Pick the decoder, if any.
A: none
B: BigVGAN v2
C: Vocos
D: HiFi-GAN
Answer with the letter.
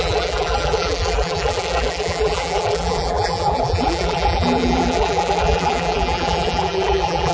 B